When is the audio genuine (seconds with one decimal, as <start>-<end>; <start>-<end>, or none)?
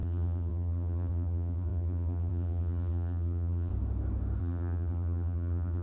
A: 3.7-4.4